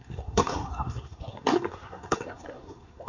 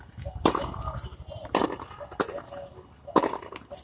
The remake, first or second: first